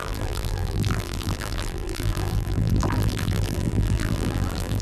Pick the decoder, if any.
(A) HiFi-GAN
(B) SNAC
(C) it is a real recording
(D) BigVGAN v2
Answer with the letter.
D